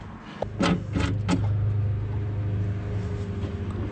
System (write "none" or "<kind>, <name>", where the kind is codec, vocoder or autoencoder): none